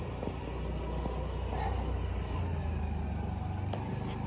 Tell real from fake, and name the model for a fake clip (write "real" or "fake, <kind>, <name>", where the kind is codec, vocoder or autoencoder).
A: real